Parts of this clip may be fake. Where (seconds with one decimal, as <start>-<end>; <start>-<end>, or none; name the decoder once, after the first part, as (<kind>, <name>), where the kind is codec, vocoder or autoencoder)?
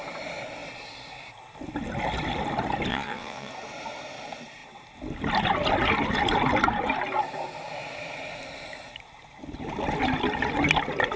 2.9-3.5 (vocoder, WaveNeXt)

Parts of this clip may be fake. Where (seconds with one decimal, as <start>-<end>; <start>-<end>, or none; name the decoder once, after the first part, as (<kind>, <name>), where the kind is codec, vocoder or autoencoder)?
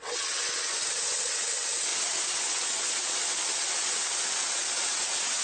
0.0-5.4 (vocoder, WaveNeXt)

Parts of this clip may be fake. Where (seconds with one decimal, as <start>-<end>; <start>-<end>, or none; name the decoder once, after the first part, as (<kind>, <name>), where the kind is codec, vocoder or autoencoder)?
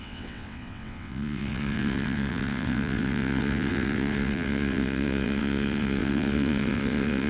0.0-7.3 (vocoder, WaveNeXt)